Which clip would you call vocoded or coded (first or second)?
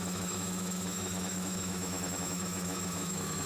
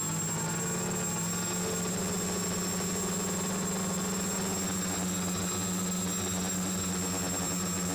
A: first